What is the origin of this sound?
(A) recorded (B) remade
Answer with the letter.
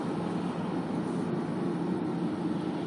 A